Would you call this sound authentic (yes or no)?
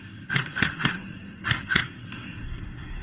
no